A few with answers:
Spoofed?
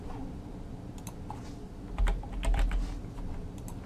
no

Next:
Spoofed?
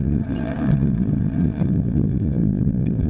yes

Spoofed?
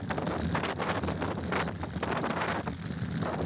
no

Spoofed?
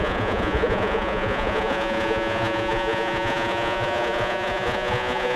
yes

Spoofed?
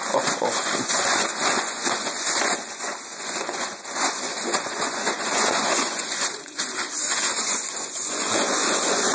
yes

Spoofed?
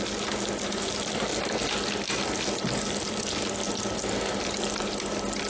no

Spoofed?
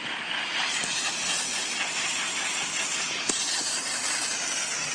no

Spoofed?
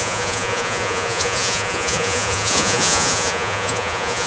yes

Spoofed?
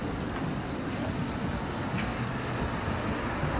no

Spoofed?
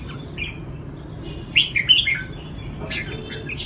no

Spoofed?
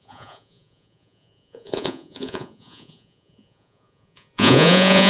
yes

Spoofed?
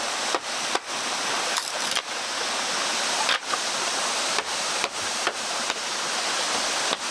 no